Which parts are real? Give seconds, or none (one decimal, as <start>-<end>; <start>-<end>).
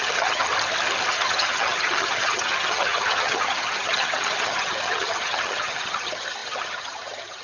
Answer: 0.5-1.1